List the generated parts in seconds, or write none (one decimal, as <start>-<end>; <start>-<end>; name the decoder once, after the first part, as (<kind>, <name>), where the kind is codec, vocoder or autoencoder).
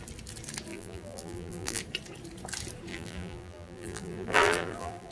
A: 0.7-1.8 (vocoder, BigVGAN v2); 2.9-5.1